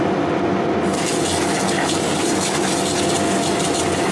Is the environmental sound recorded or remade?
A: recorded